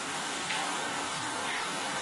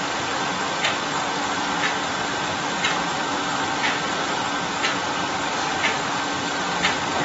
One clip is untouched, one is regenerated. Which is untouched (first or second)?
second